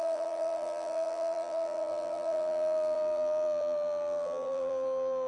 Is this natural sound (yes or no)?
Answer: no